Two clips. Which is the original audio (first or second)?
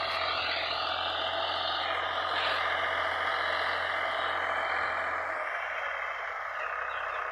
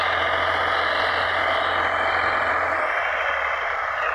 first